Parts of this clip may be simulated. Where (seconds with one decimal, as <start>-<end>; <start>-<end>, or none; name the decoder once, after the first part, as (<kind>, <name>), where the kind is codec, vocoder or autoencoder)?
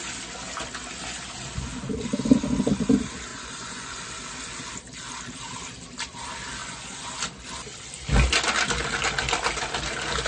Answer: 3.3-4.0 (vocoder, Vocos); 6.6-7.1